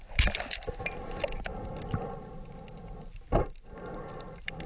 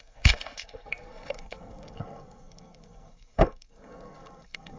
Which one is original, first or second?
first